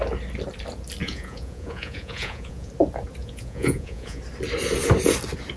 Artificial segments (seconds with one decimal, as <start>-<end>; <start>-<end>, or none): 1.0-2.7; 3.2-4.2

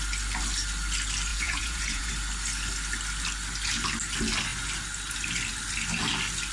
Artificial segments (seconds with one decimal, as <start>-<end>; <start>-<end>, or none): 1.3-2.1

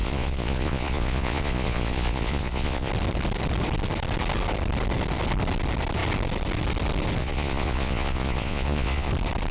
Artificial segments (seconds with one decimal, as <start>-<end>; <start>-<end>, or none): 0.0-2.9; 7.2-9.1

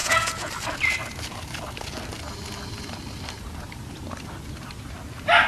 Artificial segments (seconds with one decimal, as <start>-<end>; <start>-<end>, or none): 0.0-0.5